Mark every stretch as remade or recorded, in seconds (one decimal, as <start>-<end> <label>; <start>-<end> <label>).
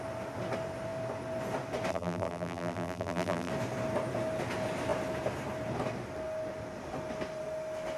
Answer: 0.0-1.9 recorded; 1.9-3.5 remade; 3.5-8.0 recorded